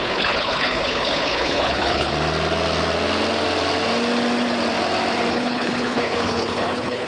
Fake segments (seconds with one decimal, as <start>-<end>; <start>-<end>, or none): 0.0-2.1; 5.3-7.1